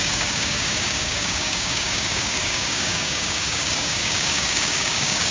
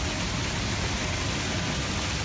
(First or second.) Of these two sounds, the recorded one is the second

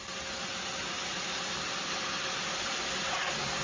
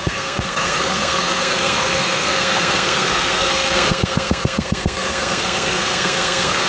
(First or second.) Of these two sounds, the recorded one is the first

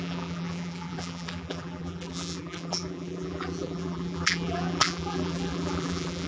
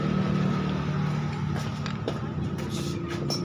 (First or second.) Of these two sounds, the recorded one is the second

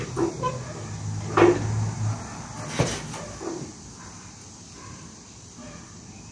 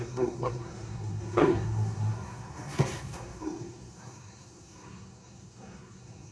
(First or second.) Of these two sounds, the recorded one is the first